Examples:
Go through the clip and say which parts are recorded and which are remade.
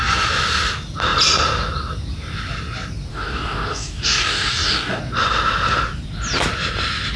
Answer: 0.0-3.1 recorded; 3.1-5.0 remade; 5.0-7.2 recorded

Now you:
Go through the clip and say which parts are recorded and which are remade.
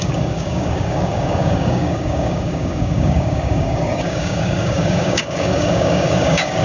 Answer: 0.0-6.6 remade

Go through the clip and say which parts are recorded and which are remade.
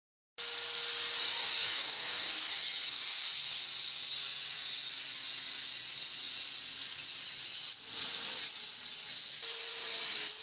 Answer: 0.0-1.2 recorded; 1.2-2.5 remade; 2.5-2.9 recorded; 2.9-3.6 remade; 3.6-10.4 recorded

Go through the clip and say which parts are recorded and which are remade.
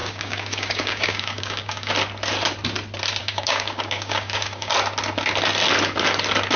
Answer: 0.0-1.9 remade; 1.9-3.2 recorded; 3.2-4.7 remade; 4.7-6.6 recorded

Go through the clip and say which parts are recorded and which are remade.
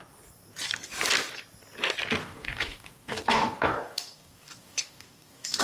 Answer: 0.0-2.2 recorded; 2.2-5.6 remade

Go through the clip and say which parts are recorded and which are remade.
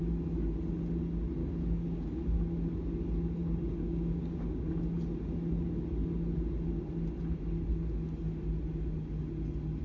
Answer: 0.0-1.4 recorded; 1.4-2.2 remade; 2.2-3.4 recorded; 3.4-4.7 remade; 4.7-9.8 recorded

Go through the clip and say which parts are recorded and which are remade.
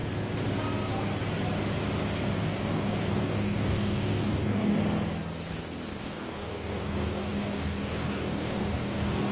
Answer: 0.0-2.4 recorded; 2.4-4.8 remade; 4.8-6.0 recorded; 6.0-9.3 remade